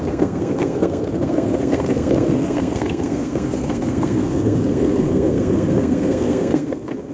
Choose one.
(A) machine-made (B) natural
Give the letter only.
A